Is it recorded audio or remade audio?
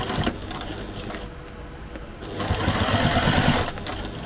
recorded